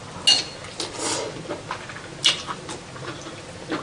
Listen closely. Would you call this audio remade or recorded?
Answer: recorded